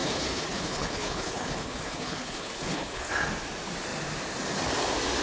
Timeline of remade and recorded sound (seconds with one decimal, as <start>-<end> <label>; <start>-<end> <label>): 0.0-3.1 remade; 3.1-5.2 recorded